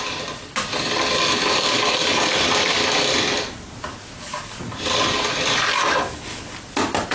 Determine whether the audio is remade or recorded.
recorded